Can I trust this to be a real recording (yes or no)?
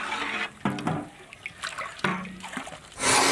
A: yes